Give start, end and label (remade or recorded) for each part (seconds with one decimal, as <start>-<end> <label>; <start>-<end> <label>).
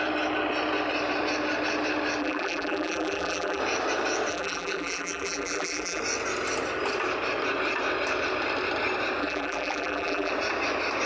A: 0.0-2.2 recorded; 2.2-3.6 remade; 3.6-4.3 recorded; 4.3-6.0 remade; 6.0-9.2 recorded; 9.2-10.3 remade; 10.3-11.1 recorded